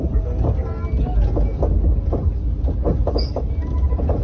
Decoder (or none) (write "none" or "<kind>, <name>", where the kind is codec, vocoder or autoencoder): none